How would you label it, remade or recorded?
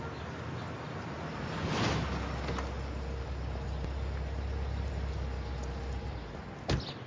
recorded